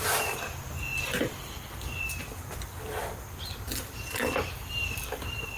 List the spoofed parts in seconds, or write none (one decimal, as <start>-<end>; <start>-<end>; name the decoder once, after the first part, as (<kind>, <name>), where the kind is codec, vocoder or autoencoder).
none